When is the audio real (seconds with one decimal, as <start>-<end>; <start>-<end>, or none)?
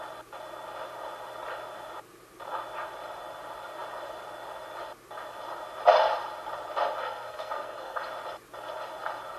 0.0-7.0; 8.0-9.4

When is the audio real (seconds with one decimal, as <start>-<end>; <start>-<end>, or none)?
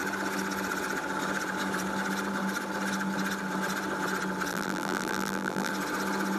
0.0-4.5; 5.7-6.4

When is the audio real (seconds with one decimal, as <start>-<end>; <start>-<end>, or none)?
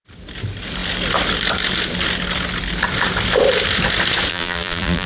0.0-4.3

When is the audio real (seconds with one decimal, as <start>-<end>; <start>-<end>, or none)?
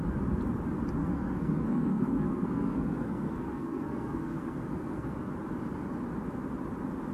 0.0-1.0; 5.3-7.1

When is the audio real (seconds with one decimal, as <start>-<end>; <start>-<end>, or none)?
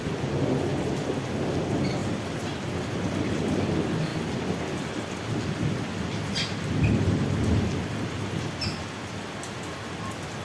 0.0-10.4